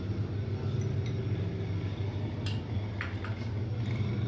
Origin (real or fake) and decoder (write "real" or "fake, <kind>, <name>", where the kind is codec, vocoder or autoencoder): real